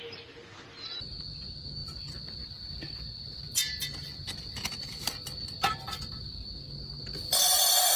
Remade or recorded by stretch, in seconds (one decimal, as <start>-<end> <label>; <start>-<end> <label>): 0.0-8.0 recorded